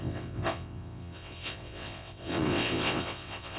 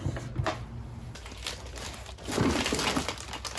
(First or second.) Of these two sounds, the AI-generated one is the first